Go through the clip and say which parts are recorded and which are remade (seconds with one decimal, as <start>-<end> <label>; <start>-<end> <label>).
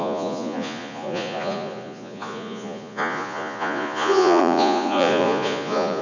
0.0-6.0 remade